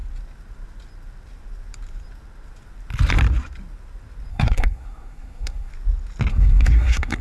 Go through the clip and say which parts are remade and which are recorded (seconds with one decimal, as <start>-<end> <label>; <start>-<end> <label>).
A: 0.0-4.3 recorded; 4.3-5.7 remade; 5.7-6.3 recorded; 6.3-7.2 remade